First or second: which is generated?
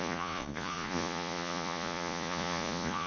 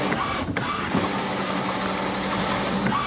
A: first